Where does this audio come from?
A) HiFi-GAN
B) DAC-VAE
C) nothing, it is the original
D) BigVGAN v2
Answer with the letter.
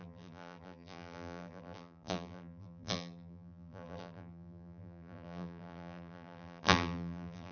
D